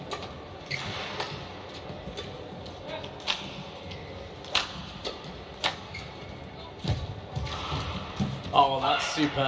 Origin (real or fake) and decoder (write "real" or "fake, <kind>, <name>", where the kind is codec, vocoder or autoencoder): real